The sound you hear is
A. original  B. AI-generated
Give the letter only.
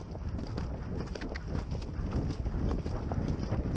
A